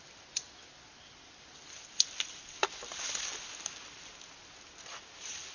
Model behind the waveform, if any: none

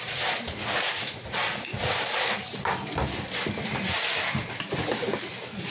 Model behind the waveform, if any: none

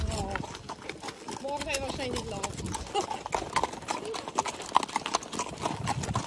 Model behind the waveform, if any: none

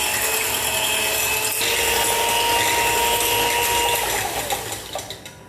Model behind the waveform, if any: none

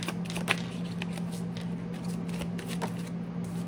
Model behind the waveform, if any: none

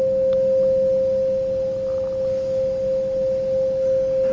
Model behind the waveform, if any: none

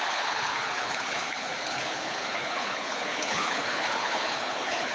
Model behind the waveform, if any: codec, HILCodec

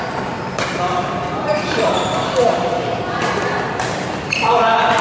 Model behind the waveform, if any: none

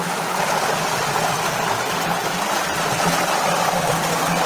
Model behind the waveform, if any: none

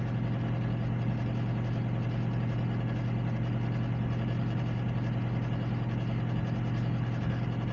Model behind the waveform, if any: none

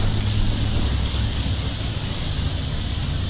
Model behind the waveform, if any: none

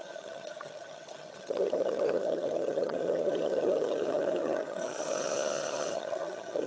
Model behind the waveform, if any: vocoder, HiFi-GAN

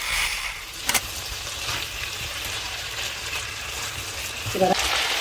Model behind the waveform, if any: vocoder, BigVGAN v2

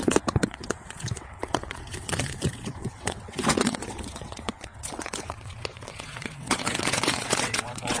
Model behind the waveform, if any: vocoder, WaveNeXt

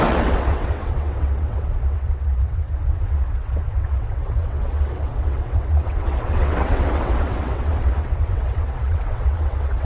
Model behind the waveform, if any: vocoder, WaveNeXt